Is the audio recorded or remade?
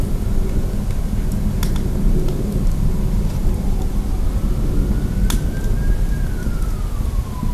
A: recorded